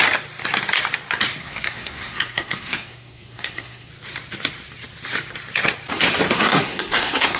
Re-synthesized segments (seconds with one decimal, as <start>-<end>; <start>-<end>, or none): 1.4-3.9; 6.3-7.4